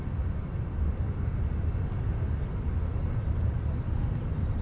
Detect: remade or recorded recorded